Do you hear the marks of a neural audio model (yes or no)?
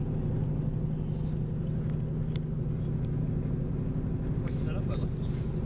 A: no